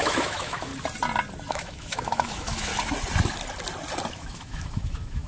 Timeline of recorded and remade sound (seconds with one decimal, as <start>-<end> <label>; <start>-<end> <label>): 0.0-0.7 remade; 0.7-1.5 recorded; 1.5-2.7 remade; 2.7-4.1 recorded; 4.1-5.3 remade